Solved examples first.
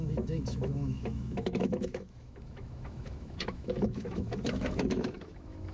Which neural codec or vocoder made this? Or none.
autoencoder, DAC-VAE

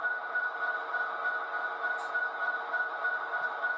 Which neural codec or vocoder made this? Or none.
none